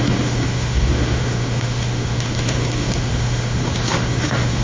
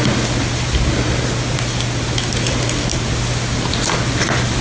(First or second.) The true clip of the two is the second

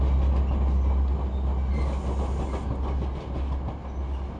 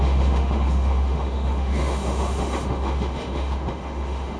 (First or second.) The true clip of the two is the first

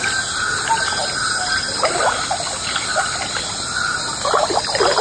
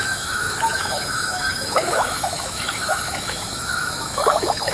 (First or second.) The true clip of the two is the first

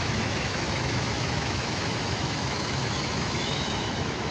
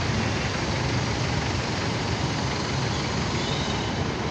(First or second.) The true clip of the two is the second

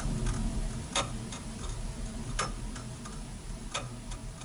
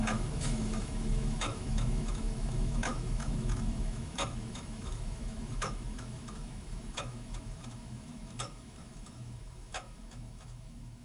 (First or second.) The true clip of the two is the first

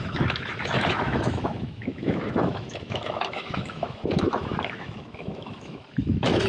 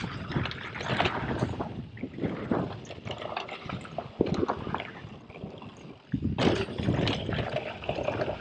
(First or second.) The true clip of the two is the second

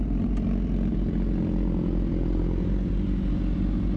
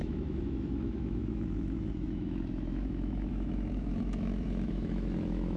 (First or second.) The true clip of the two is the first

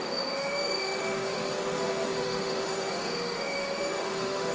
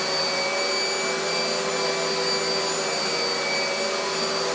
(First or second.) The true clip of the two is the second